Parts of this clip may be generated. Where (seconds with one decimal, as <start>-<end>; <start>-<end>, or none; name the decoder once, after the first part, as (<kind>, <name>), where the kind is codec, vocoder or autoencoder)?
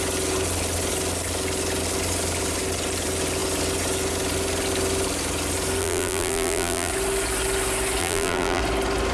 5.8-6.9 (vocoder, BigVGAN v2); 8.0-8.6